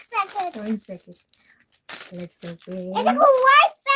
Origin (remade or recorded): recorded